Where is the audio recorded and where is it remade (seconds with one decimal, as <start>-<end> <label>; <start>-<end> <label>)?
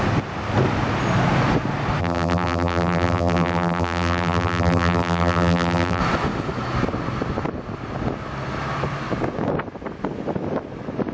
0.0-2.0 recorded; 2.0-6.0 remade; 6.0-11.1 recorded